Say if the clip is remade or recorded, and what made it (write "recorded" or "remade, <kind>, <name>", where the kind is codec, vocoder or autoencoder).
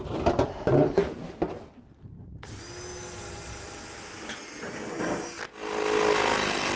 recorded